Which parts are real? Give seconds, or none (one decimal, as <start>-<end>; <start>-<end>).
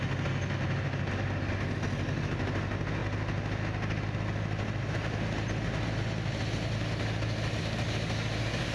0.0-8.7